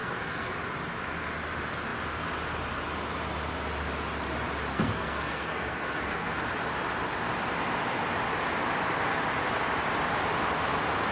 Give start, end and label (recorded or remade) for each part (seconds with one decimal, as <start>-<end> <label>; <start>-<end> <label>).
0.0-0.5 remade; 0.5-4.7 recorded; 4.7-6.4 remade; 6.4-11.1 recorded